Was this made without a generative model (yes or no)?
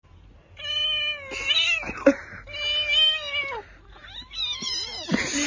yes